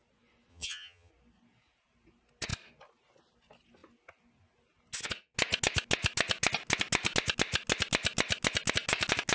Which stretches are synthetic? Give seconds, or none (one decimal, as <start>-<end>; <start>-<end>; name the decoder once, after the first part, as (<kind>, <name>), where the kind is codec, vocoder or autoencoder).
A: 0.5-1.1 (vocoder, HiFi-GAN)